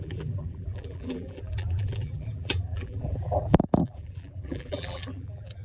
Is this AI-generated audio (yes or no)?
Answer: yes